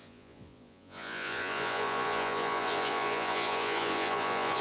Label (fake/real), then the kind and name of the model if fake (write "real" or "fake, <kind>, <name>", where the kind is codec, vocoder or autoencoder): fake, vocoder, Vocos